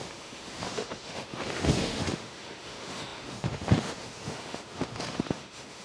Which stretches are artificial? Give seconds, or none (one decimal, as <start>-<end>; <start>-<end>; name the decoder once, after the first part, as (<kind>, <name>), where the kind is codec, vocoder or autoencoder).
0.0-5.8 (autoencoder, DAC-VAE)